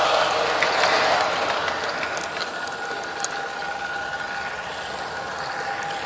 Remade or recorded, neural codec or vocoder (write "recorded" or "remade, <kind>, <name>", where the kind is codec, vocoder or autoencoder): recorded